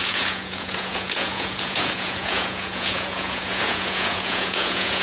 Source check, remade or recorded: remade